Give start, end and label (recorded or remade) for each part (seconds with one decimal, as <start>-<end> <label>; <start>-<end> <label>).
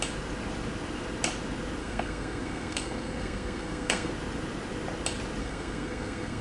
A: 0.0-1.8 recorded; 1.8-4.1 remade; 4.1-5.4 recorded; 5.4-6.4 remade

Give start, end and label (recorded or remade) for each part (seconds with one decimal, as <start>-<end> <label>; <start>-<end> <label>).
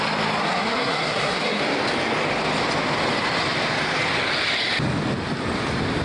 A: 0.0-0.4 recorded; 0.4-1.6 remade; 1.6-6.0 recorded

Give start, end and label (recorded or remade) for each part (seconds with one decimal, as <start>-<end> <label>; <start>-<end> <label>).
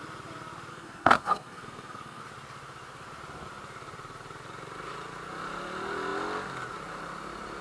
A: 0.0-0.7 recorded; 0.7-2.2 remade; 2.2-7.6 recorded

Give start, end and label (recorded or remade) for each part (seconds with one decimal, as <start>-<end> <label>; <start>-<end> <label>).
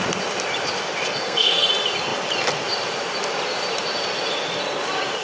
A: 0.0-1.0 recorded; 1.0-1.7 remade; 1.7-5.2 recorded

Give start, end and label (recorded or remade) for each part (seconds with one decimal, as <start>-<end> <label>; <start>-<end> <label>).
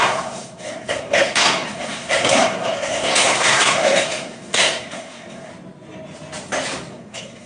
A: 0.0-5.5 remade; 5.5-6.9 recorded; 6.9-7.5 remade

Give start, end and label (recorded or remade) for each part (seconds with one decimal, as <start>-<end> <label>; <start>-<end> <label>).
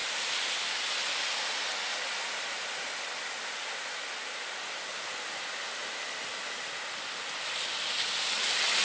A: 0.0-8.8 recorded